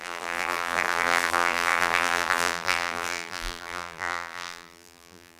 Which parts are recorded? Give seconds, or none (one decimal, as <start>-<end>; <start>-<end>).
none